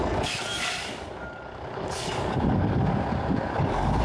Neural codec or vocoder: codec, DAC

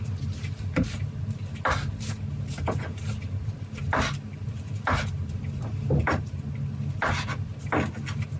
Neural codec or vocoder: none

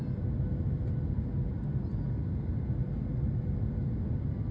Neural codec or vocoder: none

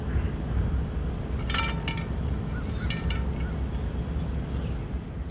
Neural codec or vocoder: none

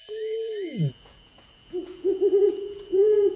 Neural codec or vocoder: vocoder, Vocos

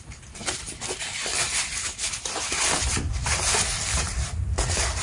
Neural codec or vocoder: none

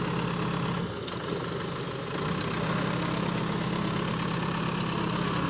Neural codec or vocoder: none